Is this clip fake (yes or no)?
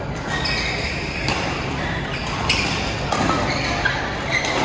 no